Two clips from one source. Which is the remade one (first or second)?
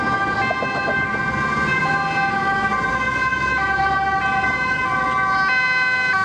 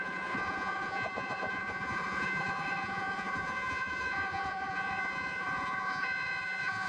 second